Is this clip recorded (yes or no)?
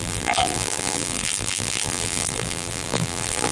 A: no